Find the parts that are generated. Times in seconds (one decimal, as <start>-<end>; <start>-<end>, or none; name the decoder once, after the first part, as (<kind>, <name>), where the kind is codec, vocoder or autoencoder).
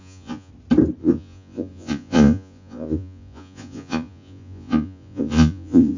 0.0-0.5 (vocoder, Vocos); 1.0-6.0